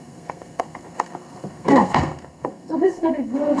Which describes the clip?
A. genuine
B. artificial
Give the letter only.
B